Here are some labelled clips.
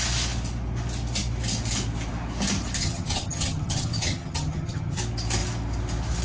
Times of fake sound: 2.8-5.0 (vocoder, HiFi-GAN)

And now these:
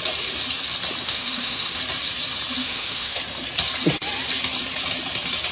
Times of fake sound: 1.0-1.8 (autoencoder, DAC-VAE); 2.6-3.2

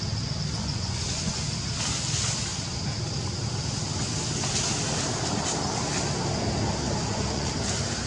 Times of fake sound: 0.6-1.4 (vocoder, Vocos); 7.0-7.5

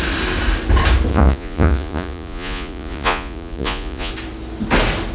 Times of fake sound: 1.1-4.1 (vocoder, Vocos)

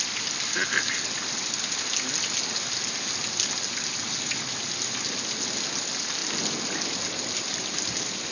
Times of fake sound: none